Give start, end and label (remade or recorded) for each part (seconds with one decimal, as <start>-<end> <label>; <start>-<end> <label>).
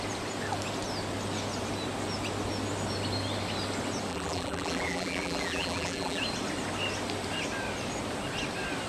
0.0-4.1 recorded; 4.1-6.2 remade; 6.2-8.9 recorded